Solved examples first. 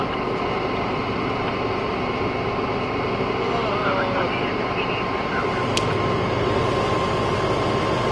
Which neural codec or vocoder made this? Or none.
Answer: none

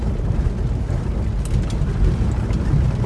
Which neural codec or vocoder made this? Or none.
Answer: none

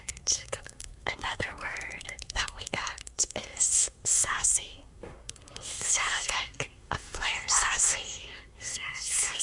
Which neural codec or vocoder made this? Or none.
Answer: codec, SNAC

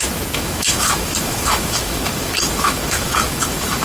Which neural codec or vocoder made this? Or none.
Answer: autoencoder, DAC-VAE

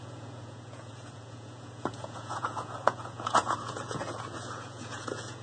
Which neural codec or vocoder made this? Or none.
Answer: vocoder, Vocos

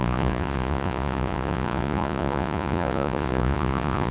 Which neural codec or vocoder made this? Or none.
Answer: vocoder, Vocos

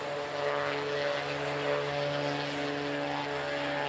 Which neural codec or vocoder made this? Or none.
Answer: none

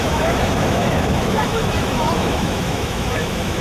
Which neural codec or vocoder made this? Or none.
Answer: autoencoder, DAC-VAE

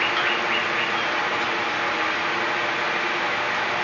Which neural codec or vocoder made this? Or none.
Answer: none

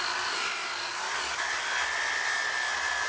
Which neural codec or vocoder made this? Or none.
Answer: none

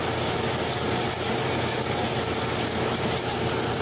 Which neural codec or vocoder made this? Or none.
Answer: none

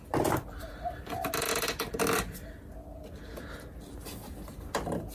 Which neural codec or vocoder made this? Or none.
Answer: none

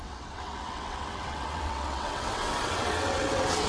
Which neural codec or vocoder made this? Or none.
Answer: vocoder, WaveNeXt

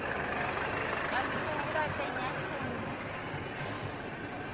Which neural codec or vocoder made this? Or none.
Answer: none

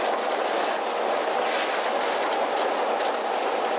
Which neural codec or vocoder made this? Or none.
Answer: none